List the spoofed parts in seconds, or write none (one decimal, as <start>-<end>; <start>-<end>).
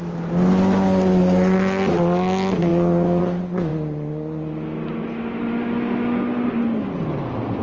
none